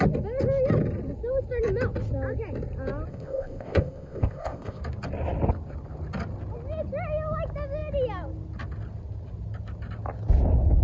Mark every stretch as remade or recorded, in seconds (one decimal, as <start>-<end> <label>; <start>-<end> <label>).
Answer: 0.0-3.1 recorded; 3.1-4.8 remade; 4.8-10.8 recorded